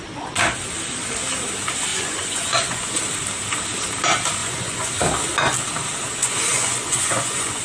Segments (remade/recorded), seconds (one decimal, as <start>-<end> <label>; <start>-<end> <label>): 0.0-1.9 recorded; 1.9-3.0 remade; 3.0-4.4 recorded; 4.4-5.0 remade; 5.0-6.2 recorded; 6.2-7.6 remade